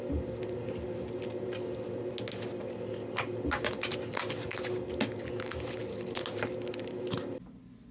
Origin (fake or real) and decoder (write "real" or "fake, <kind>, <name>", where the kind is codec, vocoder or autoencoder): real